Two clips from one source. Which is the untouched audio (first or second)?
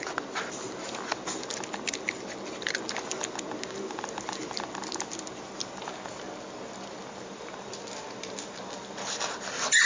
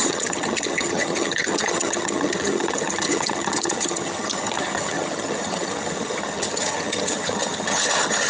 first